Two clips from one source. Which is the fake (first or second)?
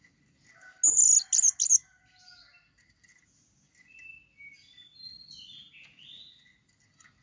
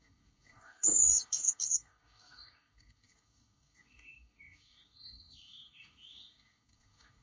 second